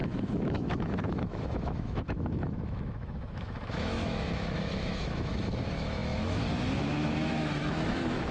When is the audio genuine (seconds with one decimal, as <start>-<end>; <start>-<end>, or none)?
none